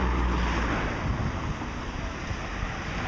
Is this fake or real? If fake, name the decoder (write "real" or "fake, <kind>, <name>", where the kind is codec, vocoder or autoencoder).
real